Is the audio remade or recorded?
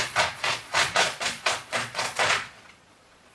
remade